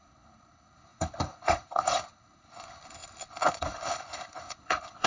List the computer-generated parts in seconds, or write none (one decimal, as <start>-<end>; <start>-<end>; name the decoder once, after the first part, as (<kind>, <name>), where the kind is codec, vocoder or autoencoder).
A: 0.0-5.1 (codec, HILCodec)

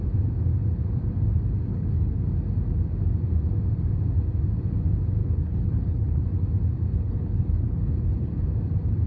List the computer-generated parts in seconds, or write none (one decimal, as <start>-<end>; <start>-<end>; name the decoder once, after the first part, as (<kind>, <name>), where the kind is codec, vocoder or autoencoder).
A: 1.7-2.2 (codec, HILCodec); 5.2-6.2; 6.9-8.4

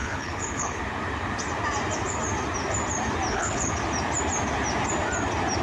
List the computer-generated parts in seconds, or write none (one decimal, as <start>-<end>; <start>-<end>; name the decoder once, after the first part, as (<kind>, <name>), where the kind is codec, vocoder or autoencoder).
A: 0.0-0.8 (codec, HILCodec); 3.3-3.8

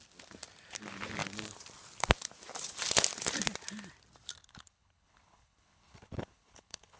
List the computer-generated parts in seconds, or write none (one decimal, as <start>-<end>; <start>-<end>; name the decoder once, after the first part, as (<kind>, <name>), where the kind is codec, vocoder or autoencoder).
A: 4.4-7.0 (codec, HILCodec)

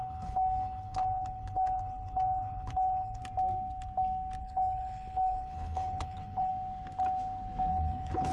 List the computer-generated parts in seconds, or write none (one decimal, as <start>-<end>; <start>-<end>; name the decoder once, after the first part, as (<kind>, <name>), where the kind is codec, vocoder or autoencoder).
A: 0.0-3.2 (codec, HILCodec); 4.4-6.5; 7.7-8.3